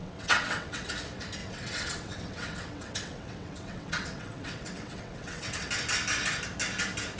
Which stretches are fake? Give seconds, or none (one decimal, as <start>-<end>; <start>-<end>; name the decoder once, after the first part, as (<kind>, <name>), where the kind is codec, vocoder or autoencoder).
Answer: 0.0-0.9 (vocoder, WaveNeXt); 1.4-5.7